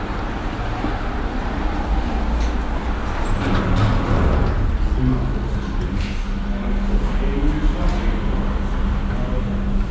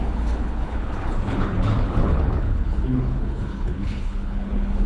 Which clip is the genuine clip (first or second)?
first